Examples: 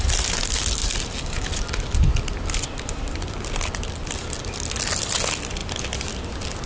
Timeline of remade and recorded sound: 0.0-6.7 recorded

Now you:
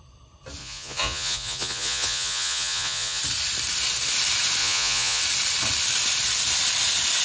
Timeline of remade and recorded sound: 0.0-0.6 recorded; 0.6-3.2 remade; 3.2-4.6 recorded; 4.6-5.2 remade; 5.2-7.2 recorded